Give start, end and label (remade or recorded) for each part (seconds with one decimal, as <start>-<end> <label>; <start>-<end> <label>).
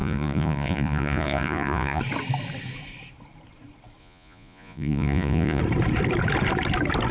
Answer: 0.0-2.0 remade; 2.0-4.0 recorded; 4.0-5.6 remade; 5.6-7.1 recorded